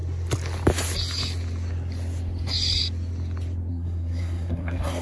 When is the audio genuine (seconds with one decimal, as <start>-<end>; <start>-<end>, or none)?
0.0-3.7